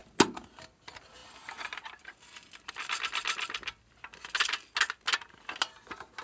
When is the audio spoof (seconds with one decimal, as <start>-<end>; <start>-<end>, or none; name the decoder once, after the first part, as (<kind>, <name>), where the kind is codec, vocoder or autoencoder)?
none

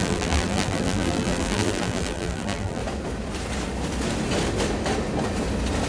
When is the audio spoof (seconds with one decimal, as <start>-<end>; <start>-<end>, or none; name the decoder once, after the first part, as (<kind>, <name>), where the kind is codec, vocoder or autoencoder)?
0.0-2.8 (vocoder, BigVGAN v2)

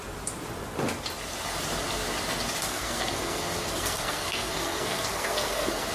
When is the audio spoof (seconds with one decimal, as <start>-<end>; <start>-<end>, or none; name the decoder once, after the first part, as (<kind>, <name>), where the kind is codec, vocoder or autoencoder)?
2.6-5.9 (codec, SNAC)

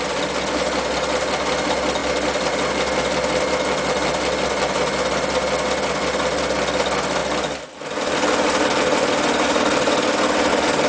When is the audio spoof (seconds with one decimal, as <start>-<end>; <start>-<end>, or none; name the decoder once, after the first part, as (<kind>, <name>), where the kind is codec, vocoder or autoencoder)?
none

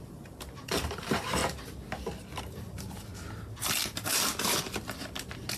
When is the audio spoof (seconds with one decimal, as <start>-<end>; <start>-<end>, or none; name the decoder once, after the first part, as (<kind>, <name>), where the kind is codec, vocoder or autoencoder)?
0.0-1.4 (vocoder, BigVGAN v2); 2.4-3.1

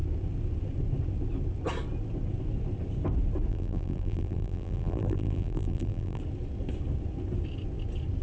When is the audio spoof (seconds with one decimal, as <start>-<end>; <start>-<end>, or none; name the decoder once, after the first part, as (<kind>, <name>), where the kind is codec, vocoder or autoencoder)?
3.5-6.2 (vocoder, BigVGAN v2)

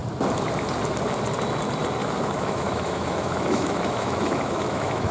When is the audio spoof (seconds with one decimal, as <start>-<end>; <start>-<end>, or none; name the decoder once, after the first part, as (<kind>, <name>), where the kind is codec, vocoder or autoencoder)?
2.0-5.1 (autoencoder, DAC-VAE)